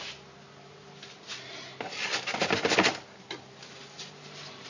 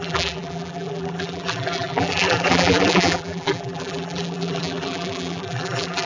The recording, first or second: first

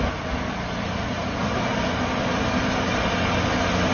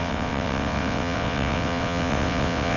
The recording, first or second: first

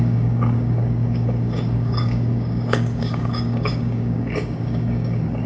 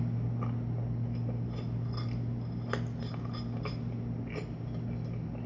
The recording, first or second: second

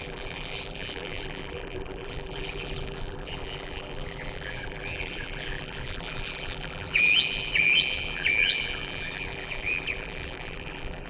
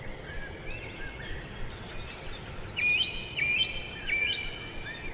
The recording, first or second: second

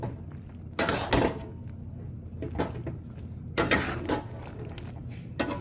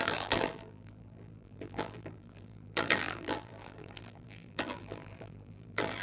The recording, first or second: first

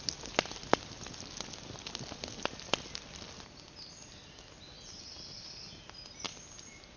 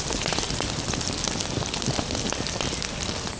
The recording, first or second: first